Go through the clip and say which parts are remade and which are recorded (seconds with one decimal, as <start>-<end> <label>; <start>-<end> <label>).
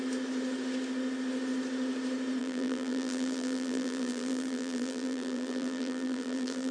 0.0-2.4 recorded; 2.4-6.7 remade